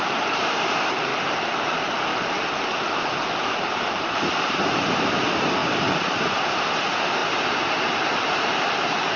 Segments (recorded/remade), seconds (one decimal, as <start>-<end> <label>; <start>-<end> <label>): 0.0-2.1 remade; 2.1-3.3 recorded; 3.3-9.2 remade

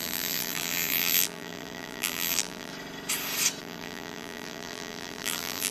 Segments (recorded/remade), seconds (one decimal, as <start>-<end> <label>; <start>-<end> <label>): 0.0-2.7 remade; 2.7-3.6 recorded; 3.6-5.7 remade

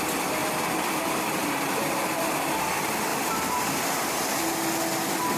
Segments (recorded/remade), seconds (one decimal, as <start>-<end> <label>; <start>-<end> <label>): 0.0-1.4 recorded; 1.4-2.0 remade; 2.0-3.1 recorded; 3.1-3.6 remade; 3.6-5.4 recorded

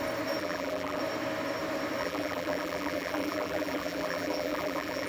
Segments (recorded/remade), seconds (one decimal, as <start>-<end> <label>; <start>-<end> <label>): 0.0-0.4 recorded; 0.4-1.0 remade; 1.0-2.0 recorded; 2.0-5.1 remade

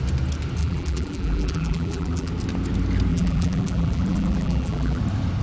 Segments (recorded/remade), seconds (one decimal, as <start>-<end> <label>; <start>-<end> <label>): 0.0-0.6 recorded; 0.6-2.3 remade; 2.3-3.1 recorded; 3.1-5.0 remade; 5.0-5.4 recorded

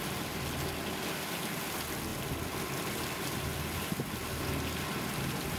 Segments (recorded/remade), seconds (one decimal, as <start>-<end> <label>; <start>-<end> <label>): 0.0-5.6 recorded